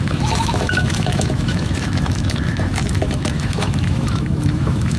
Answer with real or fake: fake